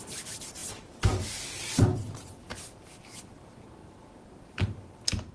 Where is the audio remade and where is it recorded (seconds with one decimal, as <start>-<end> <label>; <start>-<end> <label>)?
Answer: 0.0-3.8 recorded; 3.8-4.8 remade; 4.8-5.3 recorded

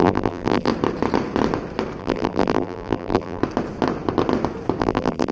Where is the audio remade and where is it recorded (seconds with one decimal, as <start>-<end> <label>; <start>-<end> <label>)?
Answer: 0.0-0.7 remade; 0.7-2.0 recorded; 2.0-3.4 remade; 3.4-4.8 recorded; 4.8-5.3 remade

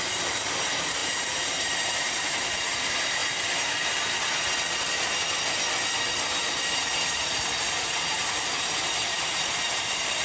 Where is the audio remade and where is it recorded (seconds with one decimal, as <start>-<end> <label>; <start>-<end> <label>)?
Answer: 0.0-3.2 remade; 3.2-6.5 recorded; 6.5-10.2 remade

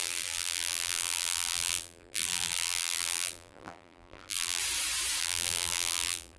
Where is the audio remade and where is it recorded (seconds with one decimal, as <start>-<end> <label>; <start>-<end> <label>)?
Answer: 0.0-4.6 remade; 4.6-5.2 recorded; 5.2-6.4 remade